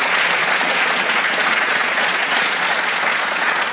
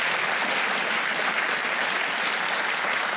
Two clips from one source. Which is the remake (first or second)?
first